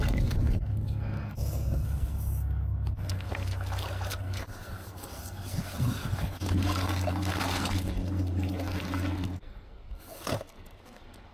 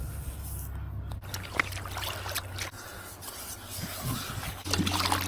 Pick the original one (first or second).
second